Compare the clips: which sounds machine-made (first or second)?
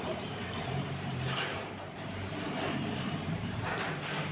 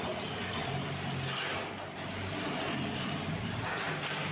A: first